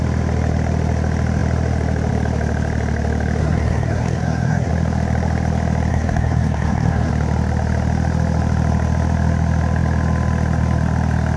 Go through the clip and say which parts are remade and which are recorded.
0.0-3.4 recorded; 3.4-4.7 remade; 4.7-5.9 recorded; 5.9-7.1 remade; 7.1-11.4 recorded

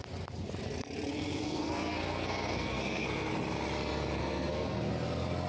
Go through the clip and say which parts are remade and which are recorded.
0.0-1.1 recorded; 1.1-3.3 remade; 3.3-4.2 recorded; 4.2-4.9 remade; 4.9-5.5 recorded

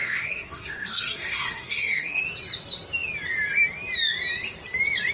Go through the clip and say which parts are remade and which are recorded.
0.0-2.2 remade; 2.2-5.1 recorded

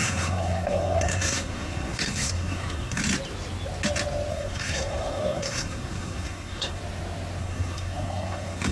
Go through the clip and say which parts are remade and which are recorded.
0.0-3.0 remade; 3.0-4.3 recorded; 4.3-6.8 remade; 6.8-7.4 recorded; 7.4-8.7 remade

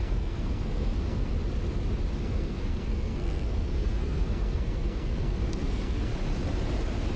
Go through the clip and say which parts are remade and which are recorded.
0.0-1.3 remade; 1.3-2.2 recorded; 2.2-6.1 remade; 6.1-7.2 recorded